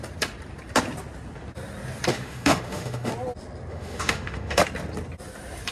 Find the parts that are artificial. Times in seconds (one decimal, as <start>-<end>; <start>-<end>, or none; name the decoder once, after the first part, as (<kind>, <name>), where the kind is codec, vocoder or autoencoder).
2.1-3.1 (autoencoder, DAC-VAE); 3.7-4.6